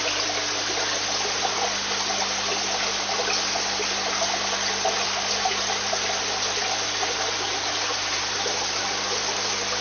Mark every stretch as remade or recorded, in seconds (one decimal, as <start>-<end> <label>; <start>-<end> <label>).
0.0-9.8 recorded